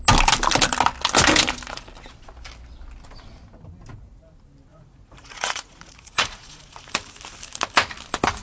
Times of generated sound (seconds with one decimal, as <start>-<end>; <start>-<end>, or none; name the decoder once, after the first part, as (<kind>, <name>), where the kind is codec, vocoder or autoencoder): 4.7-6.9 (vocoder, Vocos)